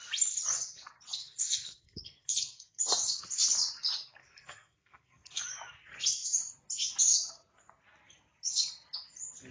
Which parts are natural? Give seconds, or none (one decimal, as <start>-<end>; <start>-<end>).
0.0-1.2; 2.8-4.2; 5.4-9.5